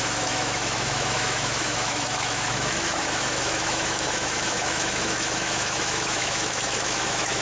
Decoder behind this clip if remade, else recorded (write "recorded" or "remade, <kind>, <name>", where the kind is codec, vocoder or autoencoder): remade, autoencoder, DAC-VAE